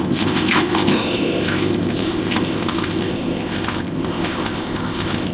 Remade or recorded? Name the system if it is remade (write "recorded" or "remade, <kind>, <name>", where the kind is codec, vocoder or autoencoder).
remade, codec, ZipCodec